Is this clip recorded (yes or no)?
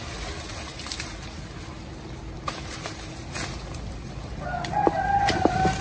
yes